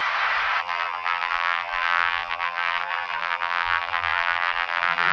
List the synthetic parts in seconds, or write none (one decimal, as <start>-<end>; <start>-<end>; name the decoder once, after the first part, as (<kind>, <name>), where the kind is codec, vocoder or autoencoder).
0.6-5.1 (vocoder, BigVGAN v2)